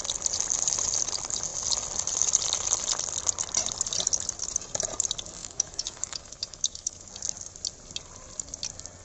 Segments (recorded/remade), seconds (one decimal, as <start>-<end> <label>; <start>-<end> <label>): 0.0-5.4 recorded; 5.4-7.1 remade; 7.1-9.0 recorded